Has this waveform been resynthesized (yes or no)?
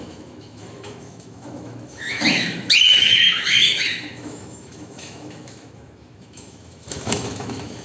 yes